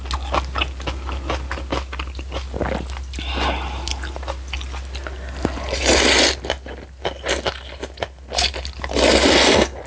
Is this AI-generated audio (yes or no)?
no